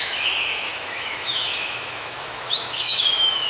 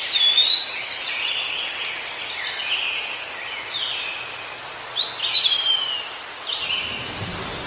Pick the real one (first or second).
second